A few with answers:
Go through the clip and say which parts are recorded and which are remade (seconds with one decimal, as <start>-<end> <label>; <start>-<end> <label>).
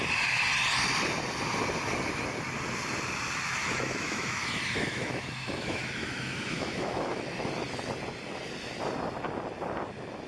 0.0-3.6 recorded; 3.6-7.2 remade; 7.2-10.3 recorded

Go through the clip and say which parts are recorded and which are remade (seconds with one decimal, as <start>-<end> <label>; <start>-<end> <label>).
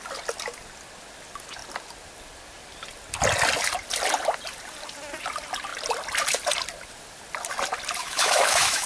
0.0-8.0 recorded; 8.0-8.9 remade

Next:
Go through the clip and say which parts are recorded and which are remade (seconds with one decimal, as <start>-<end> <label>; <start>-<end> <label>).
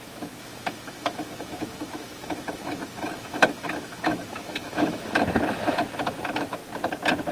0.0-6.6 remade; 6.6-7.3 recorded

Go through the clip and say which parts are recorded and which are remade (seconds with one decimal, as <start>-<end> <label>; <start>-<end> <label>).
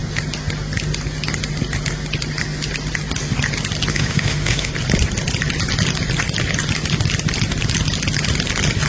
0.0-3.9 recorded; 3.9-4.7 remade; 4.7-8.9 recorded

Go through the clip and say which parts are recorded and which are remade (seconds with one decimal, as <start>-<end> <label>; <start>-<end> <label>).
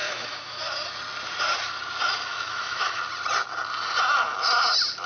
0.0-0.7 remade; 0.7-2.3 recorded; 2.3-3.0 remade; 3.0-5.1 recorded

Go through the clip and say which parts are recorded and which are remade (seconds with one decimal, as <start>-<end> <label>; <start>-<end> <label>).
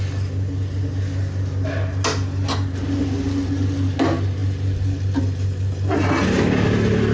0.0-7.1 recorded